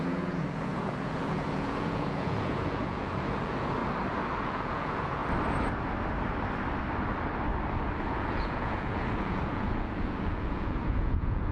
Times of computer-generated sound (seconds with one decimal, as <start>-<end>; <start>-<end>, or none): 0.0-3.8; 4.4-5.2; 8.0-11.5